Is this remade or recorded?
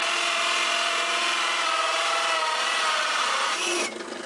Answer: recorded